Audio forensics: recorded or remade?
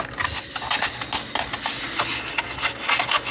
recorded